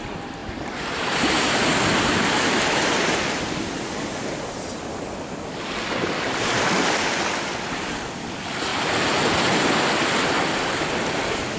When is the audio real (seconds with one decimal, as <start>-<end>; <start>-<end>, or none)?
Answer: 0.0-0.4; 1.5-11.6